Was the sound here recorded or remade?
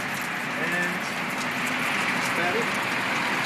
recorded